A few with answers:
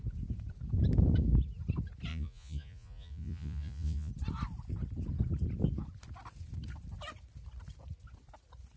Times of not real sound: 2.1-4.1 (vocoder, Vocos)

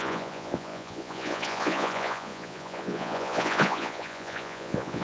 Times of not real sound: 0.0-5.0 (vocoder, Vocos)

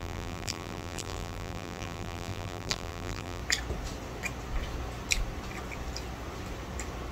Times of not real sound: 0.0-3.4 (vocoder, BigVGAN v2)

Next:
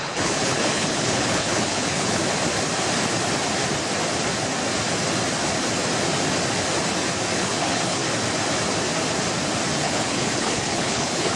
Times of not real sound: 0.0-2.2 (codec, HILCodec); 7.4-8.0; 9.8-11.4

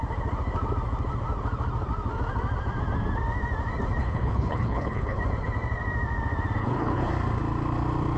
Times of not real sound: 4.0-5.2 (codec, HILCodec); 6.6-7.1

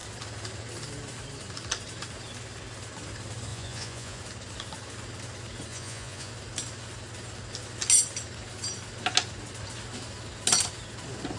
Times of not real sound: 3.5-4.2 (vocoder, Vocos); 5.7-6.3

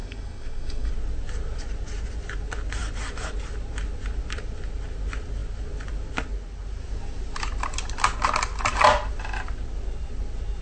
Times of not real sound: 0.0-0.9 (codec, DAC)